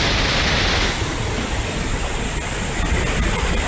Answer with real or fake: real